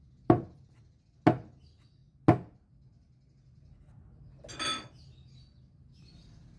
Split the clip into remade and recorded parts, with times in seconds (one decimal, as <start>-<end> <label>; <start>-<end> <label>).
0.0-6.6 recorded